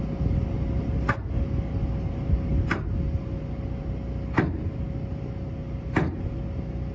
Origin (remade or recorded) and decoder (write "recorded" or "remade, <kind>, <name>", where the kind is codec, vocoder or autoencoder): recorded